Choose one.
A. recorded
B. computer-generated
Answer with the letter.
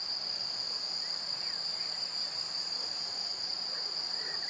A